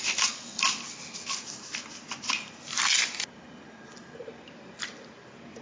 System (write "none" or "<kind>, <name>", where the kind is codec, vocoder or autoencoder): none